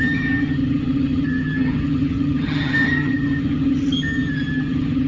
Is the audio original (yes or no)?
no